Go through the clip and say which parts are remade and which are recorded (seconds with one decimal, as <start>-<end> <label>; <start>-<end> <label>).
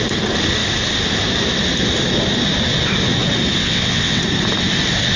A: 0.0-3.6 recorded; 3.6-4.2 remade; 4.2-5.2 recorded